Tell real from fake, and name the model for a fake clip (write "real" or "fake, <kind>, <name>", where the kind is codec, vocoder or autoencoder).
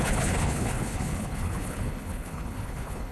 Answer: fake, codec, HILCodec